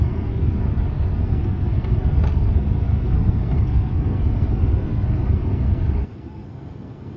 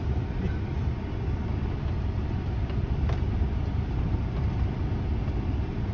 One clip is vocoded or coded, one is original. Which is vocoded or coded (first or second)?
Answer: first